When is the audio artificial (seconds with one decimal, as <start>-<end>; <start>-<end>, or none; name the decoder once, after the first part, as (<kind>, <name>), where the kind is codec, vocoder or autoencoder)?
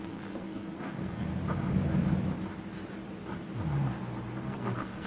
0.0-1.3 (codec, SNAC); 4.4-5.1